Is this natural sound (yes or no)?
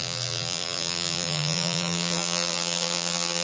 no